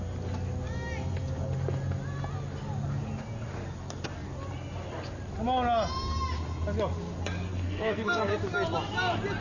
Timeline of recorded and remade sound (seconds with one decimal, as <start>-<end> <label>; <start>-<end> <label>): 0.0-7.5 recorded; 7.5-8.3 remade; 8.3-9.4 recorded